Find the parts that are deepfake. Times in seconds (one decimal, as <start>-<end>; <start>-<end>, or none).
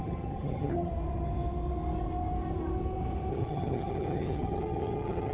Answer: 0.0-0.9; 3.3-5.3